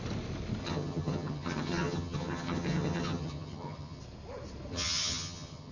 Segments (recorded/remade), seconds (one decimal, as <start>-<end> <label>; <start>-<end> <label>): 0.0-0.6 recorded; 0.6-4.0 remade; 4.0-4.7 recorded; 4.7-5.7 remade

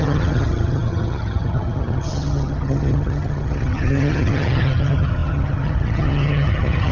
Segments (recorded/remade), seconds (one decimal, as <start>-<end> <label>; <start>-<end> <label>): 0.0-6.9 remade

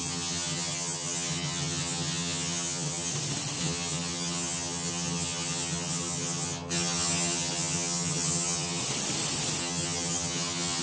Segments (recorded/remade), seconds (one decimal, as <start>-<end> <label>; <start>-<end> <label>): 0.0-3.1 remade; 3.1-3.6 recorded; 3.6-8.8 remade; 8.8-9.6 recorded; 9.6-10.8 remade

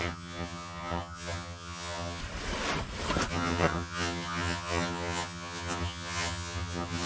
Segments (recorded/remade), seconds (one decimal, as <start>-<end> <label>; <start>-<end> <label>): 0.0-2.2 remade; 2.2-3.3 recorded; 3.3-7.1 remade

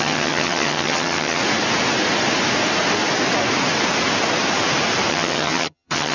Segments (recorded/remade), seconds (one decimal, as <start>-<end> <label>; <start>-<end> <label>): 0.0-1.4 remade; 1.4-5.1 recorded; 5.1-6.1 remade